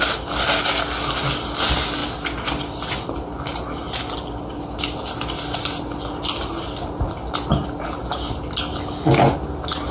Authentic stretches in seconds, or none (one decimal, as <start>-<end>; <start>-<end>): 0.0-9.9